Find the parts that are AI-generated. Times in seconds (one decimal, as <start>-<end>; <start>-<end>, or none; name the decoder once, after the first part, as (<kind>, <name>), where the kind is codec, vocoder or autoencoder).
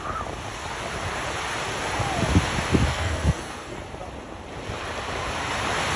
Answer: 2.9-3.8 (codec, SNAC)